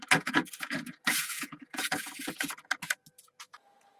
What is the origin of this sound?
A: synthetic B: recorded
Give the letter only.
A